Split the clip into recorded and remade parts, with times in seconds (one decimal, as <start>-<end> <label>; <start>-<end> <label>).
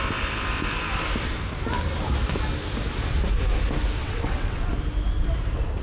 0.0-4.0 recorded; 4.0-4.7 remade; 4.7-5.8 recorded